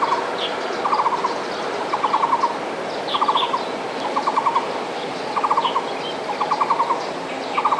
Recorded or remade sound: recorded